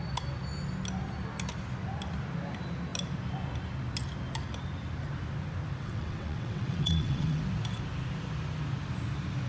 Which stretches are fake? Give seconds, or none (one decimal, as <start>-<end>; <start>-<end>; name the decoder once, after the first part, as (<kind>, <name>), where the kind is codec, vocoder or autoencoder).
5.8-7.4 (vocoder, WaveNeXt)